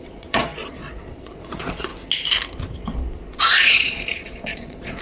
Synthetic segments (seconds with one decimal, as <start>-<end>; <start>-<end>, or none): 0.0-1.9; 3.4-5.0

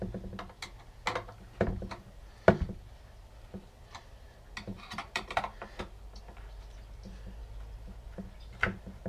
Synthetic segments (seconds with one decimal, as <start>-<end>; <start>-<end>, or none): 4.7-6.2

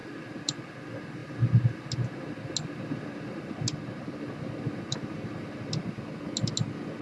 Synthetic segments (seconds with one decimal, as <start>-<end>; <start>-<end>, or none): 3.7-4.2

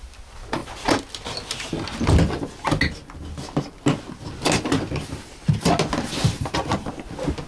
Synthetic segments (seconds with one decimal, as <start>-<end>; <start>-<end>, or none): none

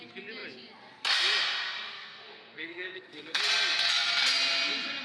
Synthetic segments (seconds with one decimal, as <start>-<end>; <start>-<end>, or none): 1.9-3.4

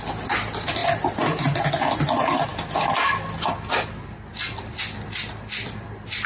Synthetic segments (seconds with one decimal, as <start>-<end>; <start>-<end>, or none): none